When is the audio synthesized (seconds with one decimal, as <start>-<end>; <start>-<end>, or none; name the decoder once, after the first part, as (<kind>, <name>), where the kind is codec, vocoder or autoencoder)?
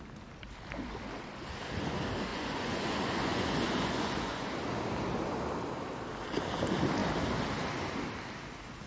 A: 2.3-4.5 (vocoder, Vocos)